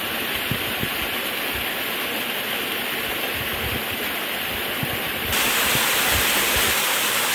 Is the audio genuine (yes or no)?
yes